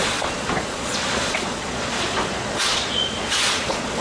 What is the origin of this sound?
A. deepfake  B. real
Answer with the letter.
A